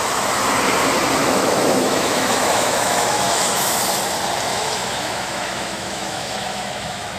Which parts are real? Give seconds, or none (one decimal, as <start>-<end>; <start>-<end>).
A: 0.0-1.2; 3.8-4.5